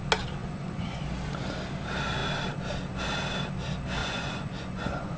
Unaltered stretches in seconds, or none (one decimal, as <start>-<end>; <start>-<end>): 0.0-0.4; 1.0-4.0